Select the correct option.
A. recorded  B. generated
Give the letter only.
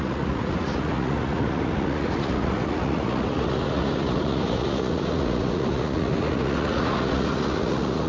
B